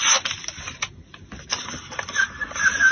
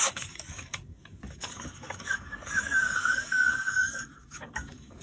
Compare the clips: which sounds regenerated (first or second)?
second